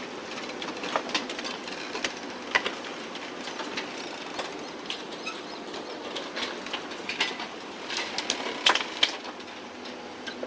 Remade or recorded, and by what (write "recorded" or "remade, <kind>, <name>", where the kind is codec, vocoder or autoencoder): recorded